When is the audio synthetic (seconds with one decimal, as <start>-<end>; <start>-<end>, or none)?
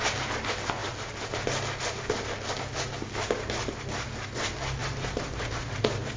4.8-5.5